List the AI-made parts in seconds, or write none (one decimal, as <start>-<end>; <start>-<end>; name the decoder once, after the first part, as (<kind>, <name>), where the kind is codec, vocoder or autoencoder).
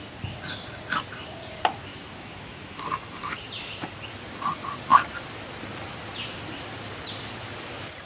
1.9-2.7 (autoencoder, DAC-VAE)